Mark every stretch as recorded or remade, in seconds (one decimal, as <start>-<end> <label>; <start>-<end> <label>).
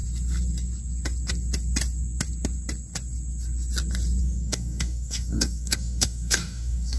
0.0-4.2 recorded; 4.2-7.0 remade